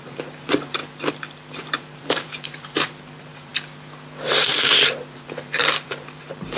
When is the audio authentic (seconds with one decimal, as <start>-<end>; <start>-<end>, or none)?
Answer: 0.8-1.6; 3.5-4.3